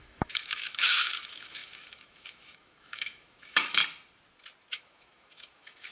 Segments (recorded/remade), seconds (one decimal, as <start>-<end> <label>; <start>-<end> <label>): 0.0-3.8 remade; 3.8-4.7 recorded; 4.7-5.9 remade